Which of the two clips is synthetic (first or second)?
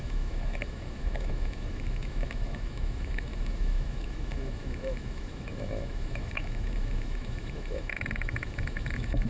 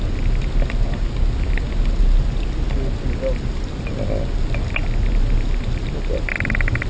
first